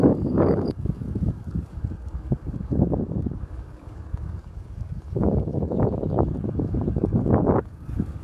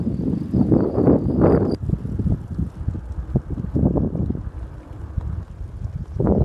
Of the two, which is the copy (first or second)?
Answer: first